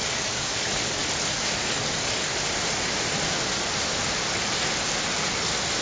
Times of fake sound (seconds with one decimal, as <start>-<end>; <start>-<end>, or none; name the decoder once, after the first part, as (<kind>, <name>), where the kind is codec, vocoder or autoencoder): 0.0-1.0 (codec, DAC); 1.6-2.3